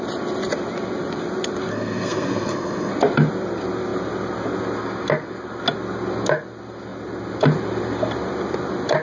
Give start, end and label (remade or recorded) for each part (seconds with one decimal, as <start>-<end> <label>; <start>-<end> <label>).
0.0-1.7 recorded; 1.7-2.9 remade; 2.9-9.0 recorded